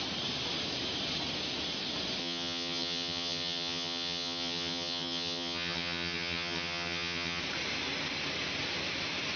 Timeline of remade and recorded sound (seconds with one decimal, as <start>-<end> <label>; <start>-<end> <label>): 0.0-2.2 recorded; 2.2-7.4 remade; 7.4-9.4 recorded